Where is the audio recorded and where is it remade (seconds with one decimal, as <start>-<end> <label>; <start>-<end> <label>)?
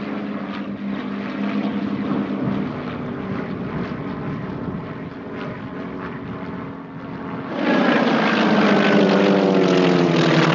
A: 0.0-10.5 recorded